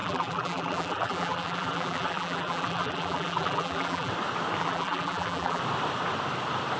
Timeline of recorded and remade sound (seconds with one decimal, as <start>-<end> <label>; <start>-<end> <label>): 0.0-4.1 remade; 4.1-4.6 recorded; 4.6-5.6 remade; 5.6-6.8 recorded